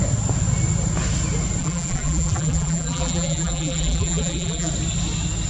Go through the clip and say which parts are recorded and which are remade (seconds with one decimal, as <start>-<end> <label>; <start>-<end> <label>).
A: 0.0-1.6 recorded; 1.6-4.7 remade; 4.7-5.5 recorded